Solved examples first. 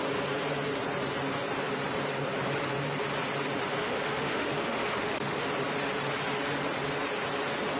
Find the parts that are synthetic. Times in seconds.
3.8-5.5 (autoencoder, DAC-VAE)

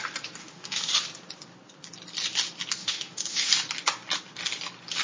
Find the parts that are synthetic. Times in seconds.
0.4-0.9 (autoencoder, DAC-VAE); 2.8-3.5

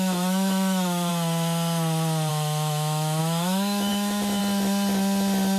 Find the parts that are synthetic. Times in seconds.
0.0-1.1 (autoencoder, DAC-VAE); 2.3-4.4

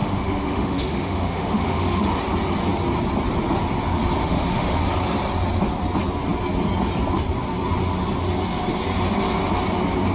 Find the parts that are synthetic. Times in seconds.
0.0-2.1 (autoencoder, DAC-VAE); 4.2-4.8

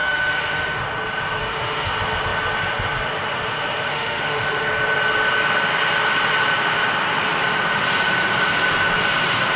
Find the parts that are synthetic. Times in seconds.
0.0-0.8 (autoencoder, DAC-VAE); 1.4-1.9; 3.9-4.7

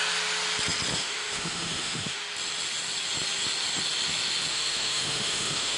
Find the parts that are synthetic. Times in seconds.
1.0-2.2 (autoencoder, DAC-VAE); 4.5-5.8

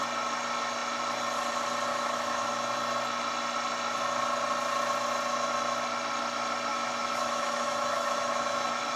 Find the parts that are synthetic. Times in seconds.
1.9-2.5 (autoencoder, DAC-VAE); 6.7-9.0

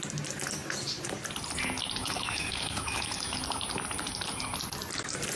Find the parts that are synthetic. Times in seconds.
2.0-3.4 (autoencoder, DAC-VAE)